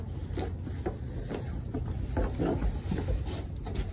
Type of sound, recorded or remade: recorded